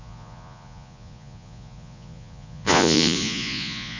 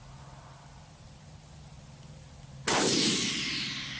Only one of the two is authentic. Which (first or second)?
second